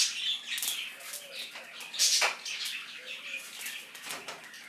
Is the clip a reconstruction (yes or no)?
no